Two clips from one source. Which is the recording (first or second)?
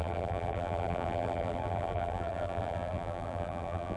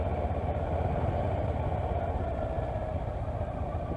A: second